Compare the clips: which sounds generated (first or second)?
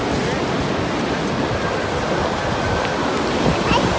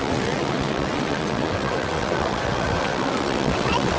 second